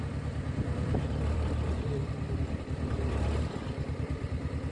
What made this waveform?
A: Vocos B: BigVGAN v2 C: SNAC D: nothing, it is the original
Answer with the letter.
B